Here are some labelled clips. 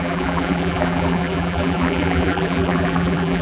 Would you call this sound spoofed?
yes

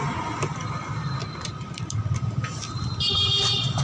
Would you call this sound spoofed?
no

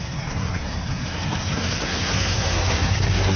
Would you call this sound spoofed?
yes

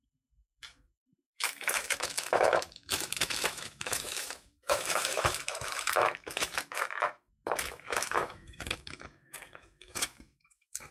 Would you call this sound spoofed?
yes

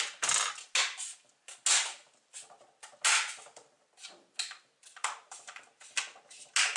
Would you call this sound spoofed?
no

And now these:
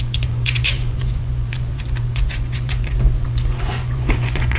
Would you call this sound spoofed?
yes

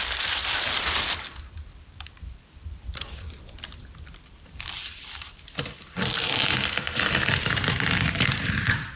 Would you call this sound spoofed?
yes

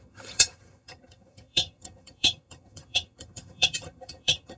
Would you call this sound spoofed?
yes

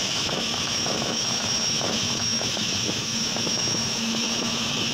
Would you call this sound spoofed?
yes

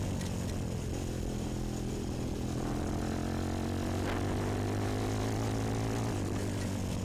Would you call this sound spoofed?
no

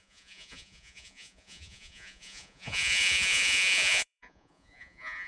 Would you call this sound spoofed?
yes